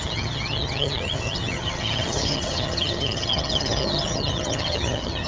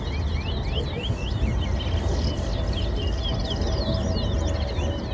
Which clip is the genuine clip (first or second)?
second